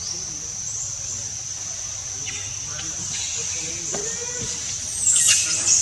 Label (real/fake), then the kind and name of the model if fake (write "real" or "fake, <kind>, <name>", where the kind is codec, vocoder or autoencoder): fake, vocoder, BigVGAN v2